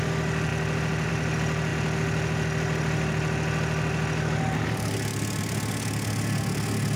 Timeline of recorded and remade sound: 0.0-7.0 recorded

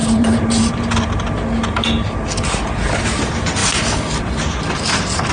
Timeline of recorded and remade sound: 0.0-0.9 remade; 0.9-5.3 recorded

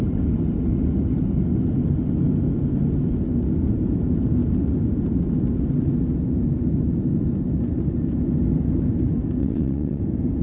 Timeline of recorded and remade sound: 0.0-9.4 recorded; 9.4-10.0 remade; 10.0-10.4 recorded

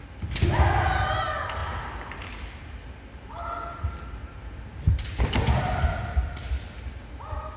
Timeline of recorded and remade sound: 0.0-7.6 recorded

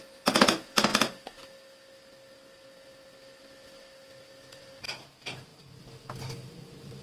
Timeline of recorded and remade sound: 0.0-7.0 recorded

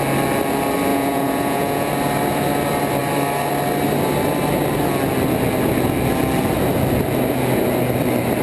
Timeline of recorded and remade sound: 0.0-0.9 recorded; 0.9-1.9 remade; 1.9-8.4 recorded

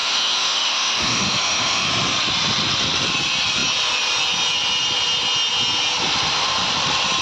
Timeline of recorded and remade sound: 0.0-1.9 remade; 1.9-7.2 recorded

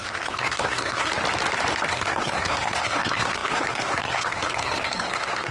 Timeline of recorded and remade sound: 0.0-1.1 remade; 1.1-1.9 recorded; 1.9-5.5 remade